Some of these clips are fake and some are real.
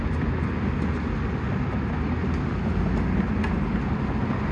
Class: real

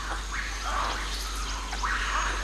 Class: real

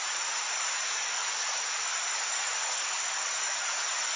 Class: real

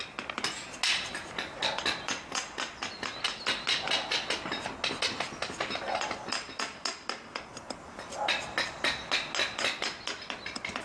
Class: real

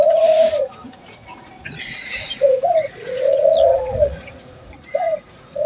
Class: fake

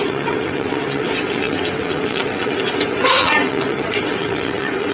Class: fake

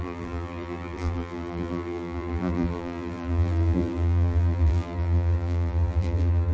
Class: fake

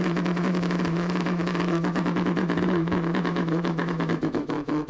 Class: fake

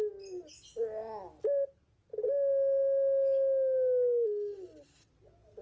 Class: real